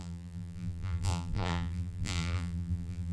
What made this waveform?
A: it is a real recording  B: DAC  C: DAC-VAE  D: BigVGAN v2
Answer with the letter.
D